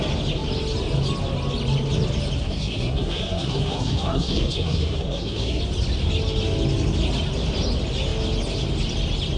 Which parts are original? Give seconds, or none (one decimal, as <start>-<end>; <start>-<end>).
0.0-2.4; 5.6-9.4